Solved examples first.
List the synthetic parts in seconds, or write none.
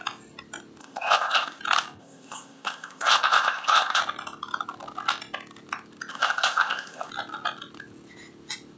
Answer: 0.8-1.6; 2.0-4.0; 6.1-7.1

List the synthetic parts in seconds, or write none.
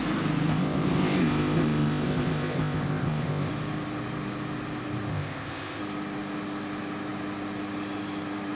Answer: 0.5-3.5; 5.1-5.8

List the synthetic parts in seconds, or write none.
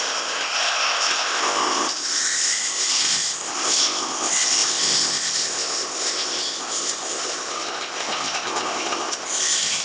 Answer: 0.0-9.8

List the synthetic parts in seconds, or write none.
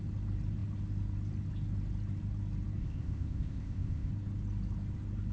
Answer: 2.8-4.1